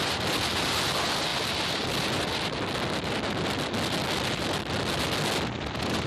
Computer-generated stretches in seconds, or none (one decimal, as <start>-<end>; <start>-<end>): none